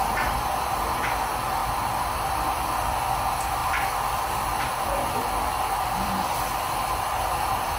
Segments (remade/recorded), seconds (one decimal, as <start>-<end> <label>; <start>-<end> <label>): 0.0-1.6 recorded; 1.6-2.3 remade; 2.3-3.6 recorded; 3.6-7.8 remade

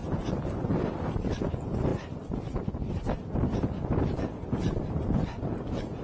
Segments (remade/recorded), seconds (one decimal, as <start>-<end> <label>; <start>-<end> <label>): 0.0-6.0 recorded

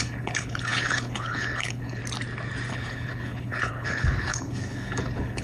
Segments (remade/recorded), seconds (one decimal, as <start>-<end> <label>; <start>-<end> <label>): 0.0-2.0 remade; 2.0-2.7 recorded; 2.7-5.4 remade

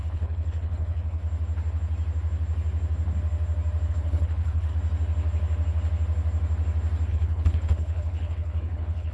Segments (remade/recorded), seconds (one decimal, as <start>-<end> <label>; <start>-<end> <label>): 0.0-1.2 remade; 1.2-3.9 recorded; 3.9-4.7 remade; 4.7-7.1 recorded; 7.1-9.1 remade

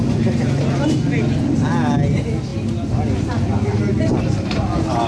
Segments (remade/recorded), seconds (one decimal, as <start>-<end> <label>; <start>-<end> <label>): 0.0-5.1 recorded

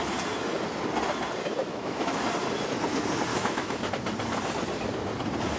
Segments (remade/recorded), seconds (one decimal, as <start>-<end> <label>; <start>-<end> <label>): 0.0-1.6 recorded; 1.6-2.2 remade; 2.2-3.3 recorded; 3.3-3.9 remade; 3.9-5.6 recorded

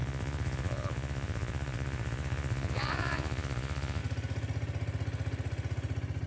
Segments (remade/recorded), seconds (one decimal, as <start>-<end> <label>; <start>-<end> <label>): 0.0-4.0 remade; 4.0-6.3 recorded